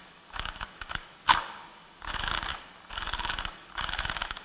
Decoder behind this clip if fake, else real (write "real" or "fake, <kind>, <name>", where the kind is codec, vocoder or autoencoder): fake, codec, DAC